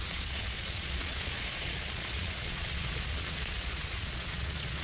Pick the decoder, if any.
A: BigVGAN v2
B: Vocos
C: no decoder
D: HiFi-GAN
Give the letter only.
B